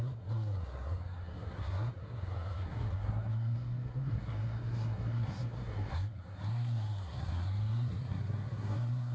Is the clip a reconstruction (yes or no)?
yes